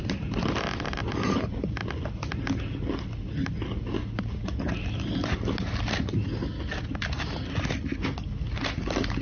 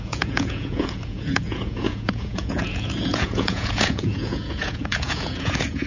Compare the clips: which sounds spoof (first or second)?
second